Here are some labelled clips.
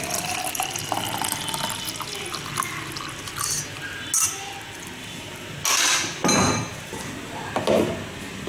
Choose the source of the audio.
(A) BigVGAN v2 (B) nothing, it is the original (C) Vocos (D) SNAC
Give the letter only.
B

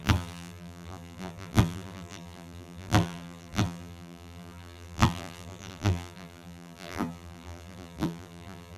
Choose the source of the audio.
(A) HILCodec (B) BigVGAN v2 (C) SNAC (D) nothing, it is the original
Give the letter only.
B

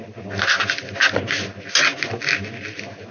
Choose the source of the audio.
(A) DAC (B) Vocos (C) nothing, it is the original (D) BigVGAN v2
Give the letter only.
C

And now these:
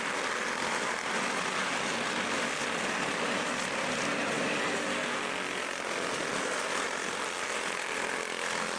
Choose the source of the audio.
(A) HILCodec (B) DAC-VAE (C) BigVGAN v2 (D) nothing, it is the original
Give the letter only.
D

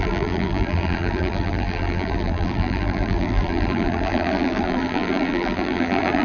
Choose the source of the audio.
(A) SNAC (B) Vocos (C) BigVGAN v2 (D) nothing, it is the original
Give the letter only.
C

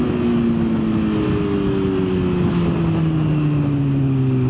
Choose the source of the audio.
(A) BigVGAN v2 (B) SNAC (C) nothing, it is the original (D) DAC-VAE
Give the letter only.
C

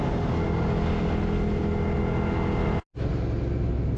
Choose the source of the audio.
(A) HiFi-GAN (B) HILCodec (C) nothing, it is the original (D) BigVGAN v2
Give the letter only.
C